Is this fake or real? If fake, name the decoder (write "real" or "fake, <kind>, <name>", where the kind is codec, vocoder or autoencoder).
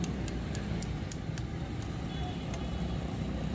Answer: real